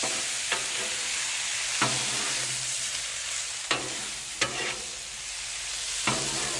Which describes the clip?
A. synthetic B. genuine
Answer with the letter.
B